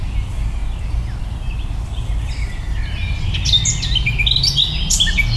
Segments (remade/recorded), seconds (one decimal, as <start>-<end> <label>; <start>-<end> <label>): 0.0-5.4 recorded

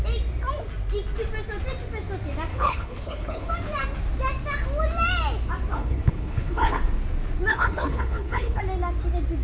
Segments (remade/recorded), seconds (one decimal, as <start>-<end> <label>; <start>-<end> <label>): 0.0-2.5 recorded; 2.5-3.5 remade; 3.5-5.7 recorded; 5.7-6.8 remade; 6.8-7.5 recorded; 7.5-8.6 remade; 8.6-9.4 recorded